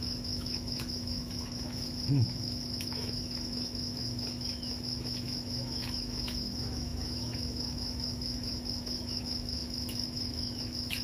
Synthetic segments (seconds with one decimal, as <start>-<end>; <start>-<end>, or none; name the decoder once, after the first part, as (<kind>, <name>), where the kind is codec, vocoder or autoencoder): 0.0-11.0 (autoencoder, DAC-VAE)